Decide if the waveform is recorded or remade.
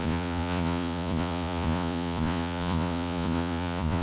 remade